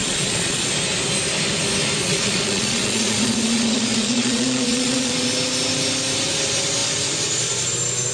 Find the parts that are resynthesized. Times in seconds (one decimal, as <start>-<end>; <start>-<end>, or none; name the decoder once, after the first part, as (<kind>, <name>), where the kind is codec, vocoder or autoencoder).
0.0-0.7 (vocoder, Vocos); 2.0-5.1